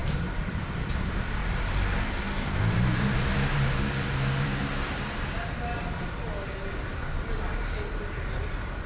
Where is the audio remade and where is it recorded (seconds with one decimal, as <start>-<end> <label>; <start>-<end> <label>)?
0.0-0.9 remade; 0.9-1.4 recorded; 1.4-5.0 remade; 5.0-8.9 recorded